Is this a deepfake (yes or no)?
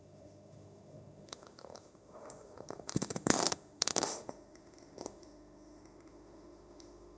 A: yes